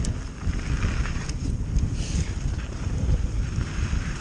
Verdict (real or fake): real